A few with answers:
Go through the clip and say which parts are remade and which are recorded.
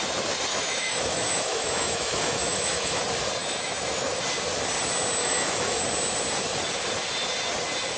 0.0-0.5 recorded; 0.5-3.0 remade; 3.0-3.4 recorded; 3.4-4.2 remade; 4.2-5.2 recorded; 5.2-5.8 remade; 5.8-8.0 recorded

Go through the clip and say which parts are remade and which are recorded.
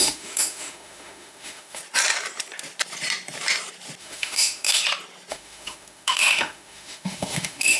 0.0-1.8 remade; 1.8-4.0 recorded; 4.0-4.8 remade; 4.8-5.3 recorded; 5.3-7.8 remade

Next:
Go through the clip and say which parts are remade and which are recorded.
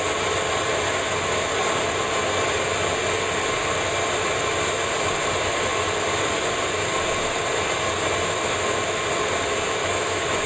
0.0-9.8 recorded; 9.8-10.5 remade